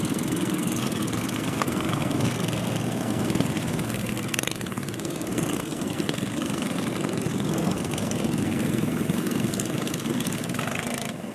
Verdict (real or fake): fake